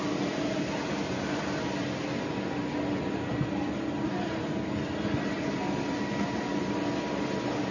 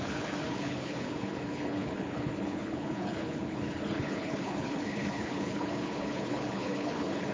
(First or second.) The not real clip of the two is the second